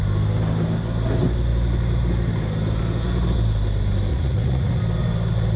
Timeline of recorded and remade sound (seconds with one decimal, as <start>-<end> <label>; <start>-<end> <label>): 0.0-4.1 recorded; 4.1-4.8 remade; 4.8-5.6 recorded